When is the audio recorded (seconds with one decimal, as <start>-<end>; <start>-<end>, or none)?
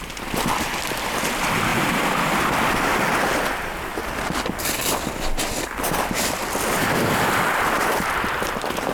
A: 0.0-8.9